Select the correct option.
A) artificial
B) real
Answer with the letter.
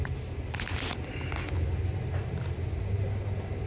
B